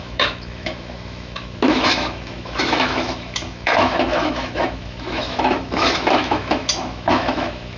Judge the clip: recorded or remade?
remade